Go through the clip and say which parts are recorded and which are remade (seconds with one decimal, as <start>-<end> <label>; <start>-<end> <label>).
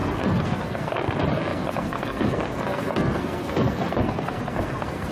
0.0-5.1 remade